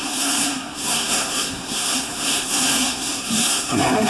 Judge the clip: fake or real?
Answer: fake